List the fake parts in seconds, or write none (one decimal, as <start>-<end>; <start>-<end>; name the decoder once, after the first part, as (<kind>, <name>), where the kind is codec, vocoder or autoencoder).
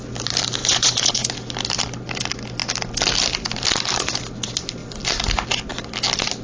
0.6-1.3 (vocoder, Vocos)